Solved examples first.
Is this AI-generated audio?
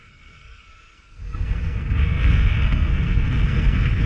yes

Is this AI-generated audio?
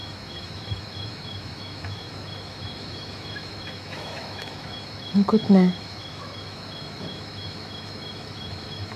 yes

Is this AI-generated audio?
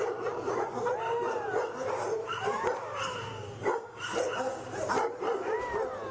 yes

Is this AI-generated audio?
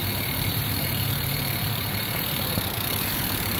yes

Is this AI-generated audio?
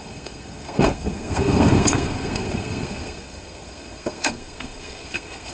yes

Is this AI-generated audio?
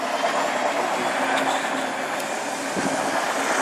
no